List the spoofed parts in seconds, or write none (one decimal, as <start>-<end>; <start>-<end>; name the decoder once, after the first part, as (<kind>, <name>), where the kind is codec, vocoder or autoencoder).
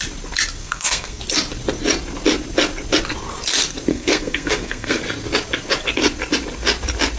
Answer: 0.6-1.2 (codec, SNAC); 3.9-5.0